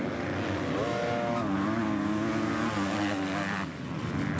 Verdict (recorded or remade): recorded